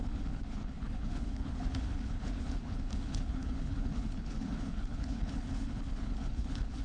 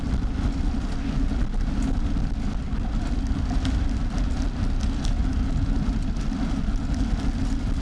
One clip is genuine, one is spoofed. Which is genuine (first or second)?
second